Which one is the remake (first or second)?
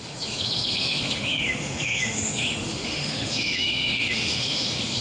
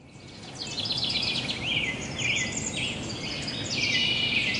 first